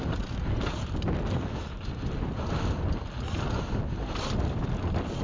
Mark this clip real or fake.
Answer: real